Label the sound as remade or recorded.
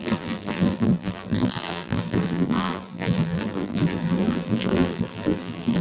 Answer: remade